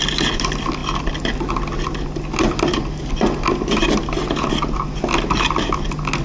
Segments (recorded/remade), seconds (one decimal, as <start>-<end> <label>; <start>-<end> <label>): 0.0-6.2 recorded